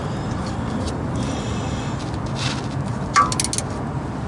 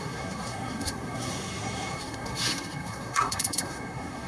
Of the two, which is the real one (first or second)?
first